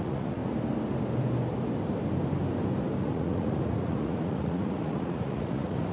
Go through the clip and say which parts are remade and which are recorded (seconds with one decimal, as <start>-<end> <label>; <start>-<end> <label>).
0.0-0.4 remade; 0.4-3.0 recorded; 3.0-5.9 remade